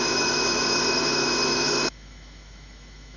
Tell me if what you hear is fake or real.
fake